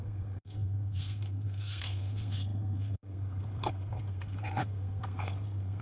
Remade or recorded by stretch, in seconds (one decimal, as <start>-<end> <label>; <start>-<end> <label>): 0.0-5.8 remade